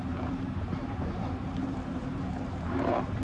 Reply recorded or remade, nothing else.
remade